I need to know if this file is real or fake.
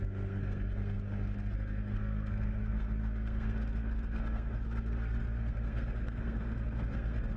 fake